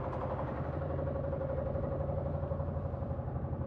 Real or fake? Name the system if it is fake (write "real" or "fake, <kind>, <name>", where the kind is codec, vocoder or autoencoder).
fake, vocoder, BigVGAN v2